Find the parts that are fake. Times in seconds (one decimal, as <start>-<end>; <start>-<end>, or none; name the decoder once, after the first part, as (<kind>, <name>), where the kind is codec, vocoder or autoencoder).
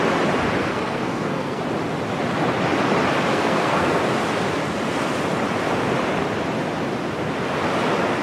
0.6-1.6 (codec, SNAC); 3.3-4.0